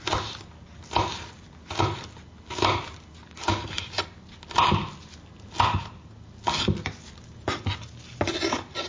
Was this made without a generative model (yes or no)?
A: yes